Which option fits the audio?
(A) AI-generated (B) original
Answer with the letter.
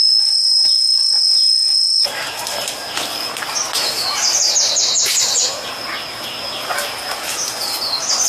B